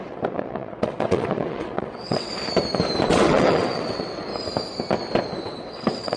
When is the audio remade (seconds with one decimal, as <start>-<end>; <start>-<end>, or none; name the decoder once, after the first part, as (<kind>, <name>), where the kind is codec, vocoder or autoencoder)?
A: 0.0-2.3 (vocoder, WaveNeXt); 3.1-4.3; 5.4-6.2